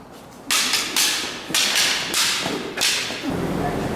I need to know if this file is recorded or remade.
recorded